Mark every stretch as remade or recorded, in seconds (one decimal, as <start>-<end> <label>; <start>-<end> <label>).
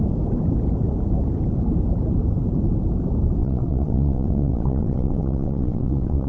0.0-3.4 recorded; 3.4-6.3 remade